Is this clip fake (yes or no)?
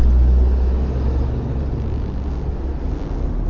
no